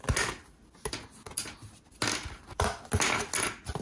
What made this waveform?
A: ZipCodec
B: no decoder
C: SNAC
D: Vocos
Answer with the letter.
B